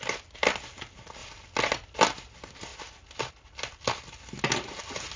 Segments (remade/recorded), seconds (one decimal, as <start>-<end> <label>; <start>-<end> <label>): 0.0-5.2 recorded